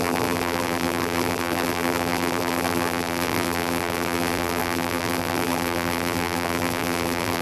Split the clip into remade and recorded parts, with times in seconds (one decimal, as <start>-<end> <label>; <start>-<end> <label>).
0.0-7.4 remade